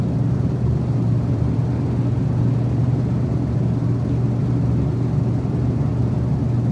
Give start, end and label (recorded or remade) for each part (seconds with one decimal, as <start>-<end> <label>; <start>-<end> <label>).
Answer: 0.0-1.6 remade; 1.6-2.8 recorded; 2.8-3.3 remade; 3.3-4.4 recorded; 4.4-5.9 remade; 5.9-6.7 recorded